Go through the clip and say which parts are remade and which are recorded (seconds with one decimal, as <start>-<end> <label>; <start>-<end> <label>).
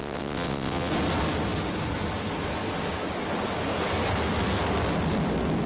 0.0-0.9 remade; 0.9-5.7 recorded